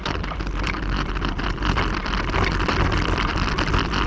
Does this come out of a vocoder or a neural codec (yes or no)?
no